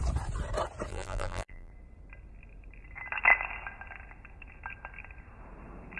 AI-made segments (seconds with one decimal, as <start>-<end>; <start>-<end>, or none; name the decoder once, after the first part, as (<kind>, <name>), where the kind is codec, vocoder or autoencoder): 0.9-1.7 (vocoder, BigVGAN v2)